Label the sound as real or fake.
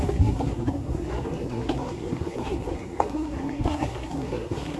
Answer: fake